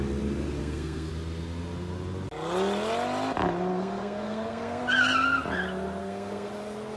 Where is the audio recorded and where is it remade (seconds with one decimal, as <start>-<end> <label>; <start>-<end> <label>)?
0.0-0.6 recorded; 0.6-1.1 remade; 1.1-3.7 recorded; 3.7-4.8 remade; 4.8-6.0 recorded; 6.0-6.5 remade; 6.5-7.0 recorded